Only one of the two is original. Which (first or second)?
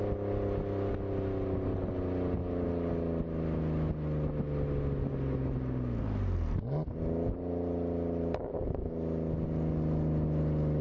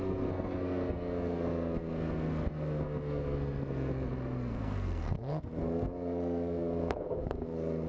first